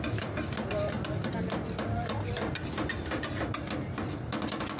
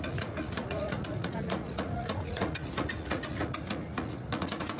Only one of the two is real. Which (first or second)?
first